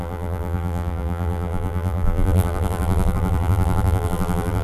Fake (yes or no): yes